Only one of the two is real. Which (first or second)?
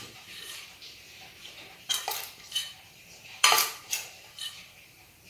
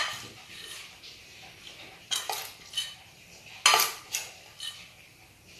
second